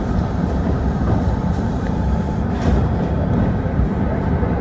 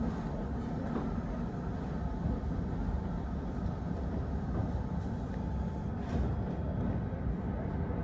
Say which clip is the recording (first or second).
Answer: second